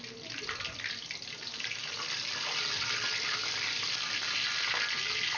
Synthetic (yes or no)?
no